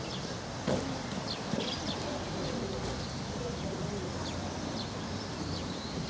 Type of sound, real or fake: fake